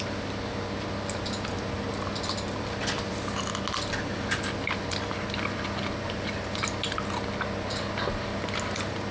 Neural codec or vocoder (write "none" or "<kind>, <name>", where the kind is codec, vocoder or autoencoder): none